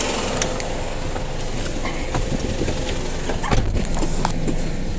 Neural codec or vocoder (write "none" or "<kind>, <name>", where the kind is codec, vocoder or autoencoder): none